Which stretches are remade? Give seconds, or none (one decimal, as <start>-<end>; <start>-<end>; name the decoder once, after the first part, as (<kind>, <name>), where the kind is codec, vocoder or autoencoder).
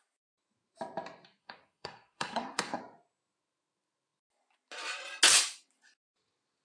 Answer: 1.4-2.8 (codec, SNAC)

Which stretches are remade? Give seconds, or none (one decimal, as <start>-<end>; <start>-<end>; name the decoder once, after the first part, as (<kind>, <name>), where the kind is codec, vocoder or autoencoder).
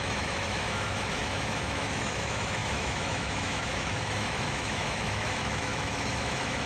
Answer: 0.0-6.7 (autoencoder, DAC-VAE)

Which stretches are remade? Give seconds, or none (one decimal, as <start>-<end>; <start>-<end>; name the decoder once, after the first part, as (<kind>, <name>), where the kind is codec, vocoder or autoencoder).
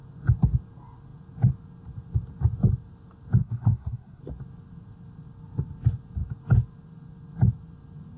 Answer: 3.4-4.2 (codec, SNAC)